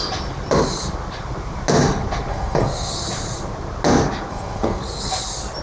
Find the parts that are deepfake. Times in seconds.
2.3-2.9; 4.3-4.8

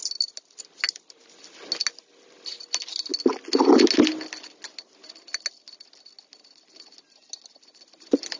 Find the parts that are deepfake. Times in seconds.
none